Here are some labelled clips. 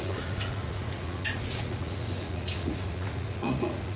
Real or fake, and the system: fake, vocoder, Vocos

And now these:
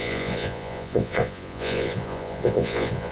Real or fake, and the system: fake, vocoder, Vocos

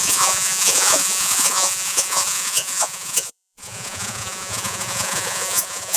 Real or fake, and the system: fake, vocoder, Vocos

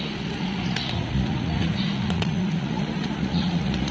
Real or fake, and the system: fake, vocoder, Vocos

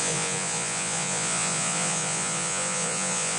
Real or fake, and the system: fake, vocoder, Vocos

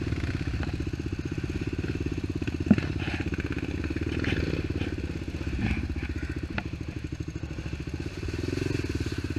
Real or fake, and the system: real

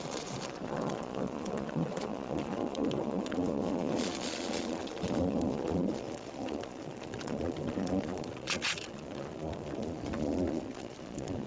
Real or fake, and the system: fake, vocoder, Vocos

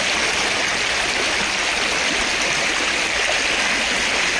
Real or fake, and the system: real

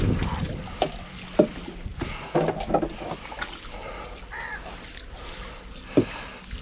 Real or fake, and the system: real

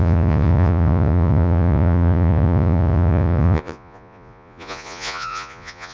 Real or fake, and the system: fake, vocoder, Vocos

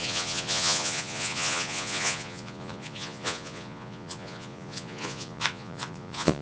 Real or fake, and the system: fake, vocoder, Vocos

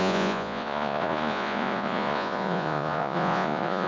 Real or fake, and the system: fake, vocoder, Vocos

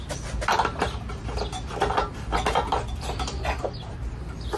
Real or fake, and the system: real